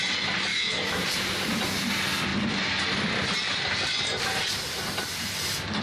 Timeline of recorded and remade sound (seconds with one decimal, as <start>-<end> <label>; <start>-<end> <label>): 0.0-0.5 recorded; 0.5-1.0 remade; 1.0-5.8 recorded